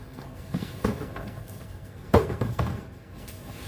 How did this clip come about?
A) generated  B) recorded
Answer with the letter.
A